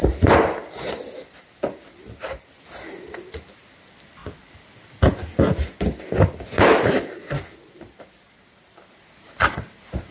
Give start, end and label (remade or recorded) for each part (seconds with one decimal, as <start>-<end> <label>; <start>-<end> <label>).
0.0-10.1 recorded